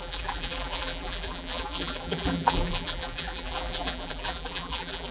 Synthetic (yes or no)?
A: yes